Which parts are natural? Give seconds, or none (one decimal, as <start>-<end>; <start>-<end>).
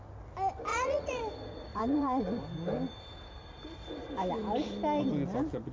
0.0-0.7; 1.2-1.7; 2.2-5.7